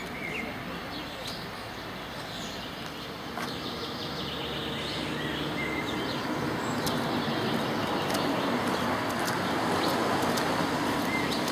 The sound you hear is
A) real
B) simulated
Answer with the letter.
A